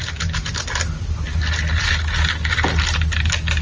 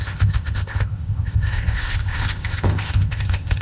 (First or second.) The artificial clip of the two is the second